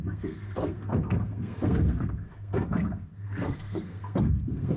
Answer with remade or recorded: remade